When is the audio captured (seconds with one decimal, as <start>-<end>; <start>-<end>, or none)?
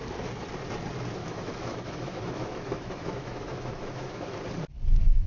0.0-1.2; 4.4-5.3